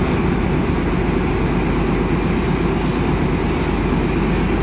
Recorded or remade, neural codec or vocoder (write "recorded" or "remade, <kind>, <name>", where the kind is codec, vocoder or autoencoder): recorded